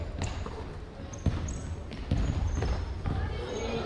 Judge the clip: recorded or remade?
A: recorded